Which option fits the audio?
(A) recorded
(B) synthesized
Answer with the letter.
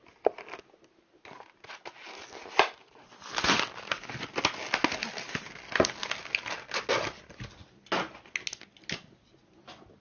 A